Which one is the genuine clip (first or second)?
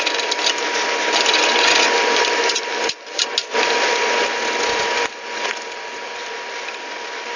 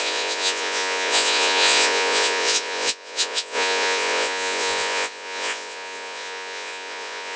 first